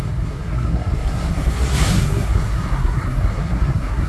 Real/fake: fake